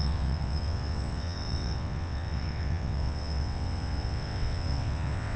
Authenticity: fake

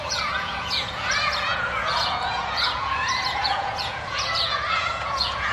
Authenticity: fake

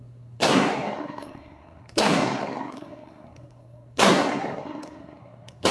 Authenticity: fake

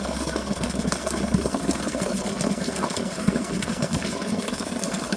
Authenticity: fake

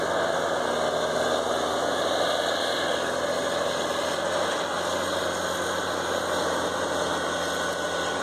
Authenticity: real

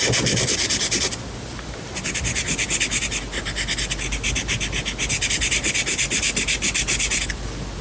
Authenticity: real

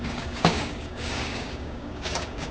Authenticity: fake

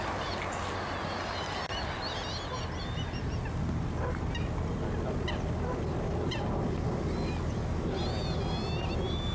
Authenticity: real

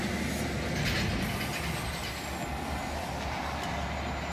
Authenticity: real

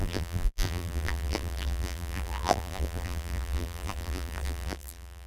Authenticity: fake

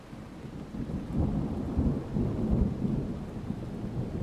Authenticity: real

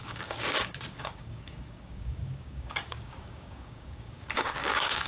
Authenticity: fake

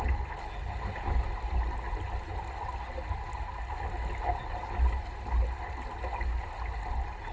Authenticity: real